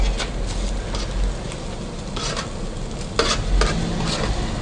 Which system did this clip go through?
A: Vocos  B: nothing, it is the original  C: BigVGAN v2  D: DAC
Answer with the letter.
B